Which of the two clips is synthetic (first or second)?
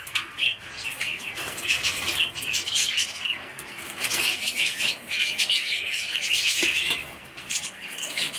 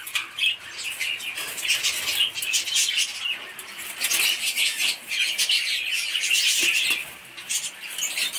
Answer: first